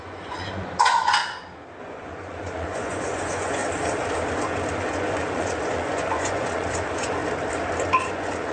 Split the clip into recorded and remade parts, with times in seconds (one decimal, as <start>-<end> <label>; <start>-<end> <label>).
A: 0.0-1.2 remade; 1.2-1.8 recorded; 1.8-3.6 remade; 3.6-4.8 recorded; 4.8-7.2 remade; 7.2-8.1 recorded; 8.1-8.5 remade